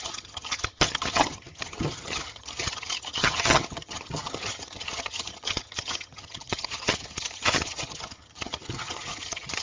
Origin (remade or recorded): remade